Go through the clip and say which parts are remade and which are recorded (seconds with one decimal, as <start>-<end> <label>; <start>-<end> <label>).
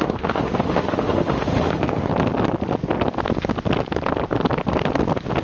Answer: 0.0-2.1 remade; 2.1-5.4 recorded